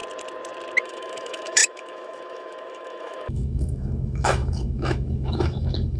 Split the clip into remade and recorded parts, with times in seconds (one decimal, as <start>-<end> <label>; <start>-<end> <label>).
0.0-0.8 recorded; 0.8-6.0 remade